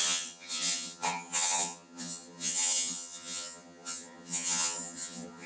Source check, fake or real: fake